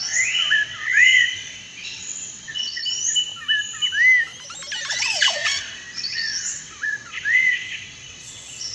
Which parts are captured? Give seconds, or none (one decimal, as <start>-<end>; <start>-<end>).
2.8-4.9